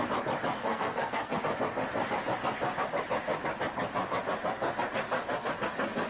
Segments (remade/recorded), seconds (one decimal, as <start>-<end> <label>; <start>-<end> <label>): 0.0-0.6 recorded; 0.6-1.4 remade; 1.4-6.1 recorded